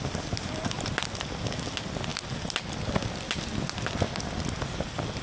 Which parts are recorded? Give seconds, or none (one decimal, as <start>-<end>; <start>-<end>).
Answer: 0.0-5.2